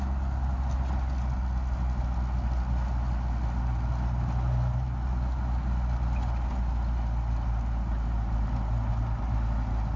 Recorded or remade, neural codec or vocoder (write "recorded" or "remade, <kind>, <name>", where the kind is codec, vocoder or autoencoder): recorded